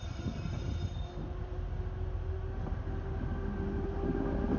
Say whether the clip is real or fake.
real